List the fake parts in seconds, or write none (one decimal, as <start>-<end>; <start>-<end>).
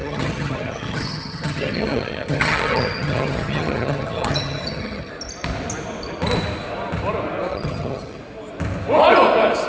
0.0-5.1; 7.5-8.2